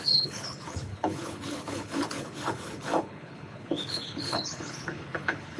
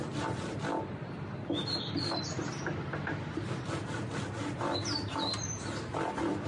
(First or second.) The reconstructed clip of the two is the first